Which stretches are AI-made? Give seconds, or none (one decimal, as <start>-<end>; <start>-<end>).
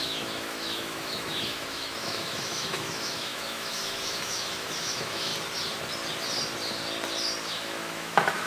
0.0-5.3; 7.5-8.5